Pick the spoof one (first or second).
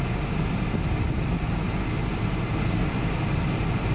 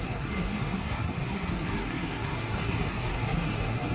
second